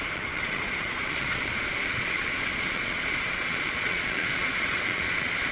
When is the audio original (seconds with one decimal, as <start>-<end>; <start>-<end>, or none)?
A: none